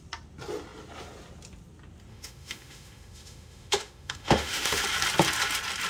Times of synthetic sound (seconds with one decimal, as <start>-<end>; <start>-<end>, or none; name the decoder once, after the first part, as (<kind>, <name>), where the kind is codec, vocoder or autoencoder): 2.1-4.8 (autoencoder, DAC-VAE)